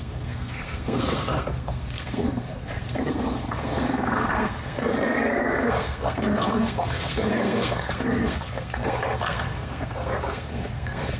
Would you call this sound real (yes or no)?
no